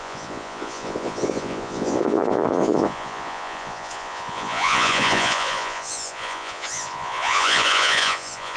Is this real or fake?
fake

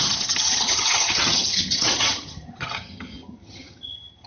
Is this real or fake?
fake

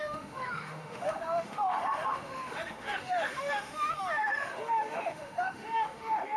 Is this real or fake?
fake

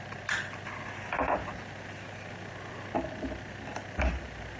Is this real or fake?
real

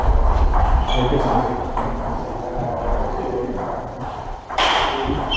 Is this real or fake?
fake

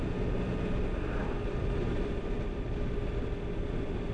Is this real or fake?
real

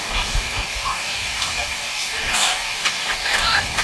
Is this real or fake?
fake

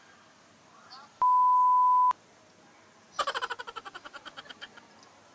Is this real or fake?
real